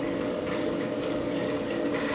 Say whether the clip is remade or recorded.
remade